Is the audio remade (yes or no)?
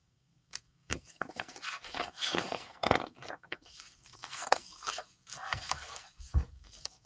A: yes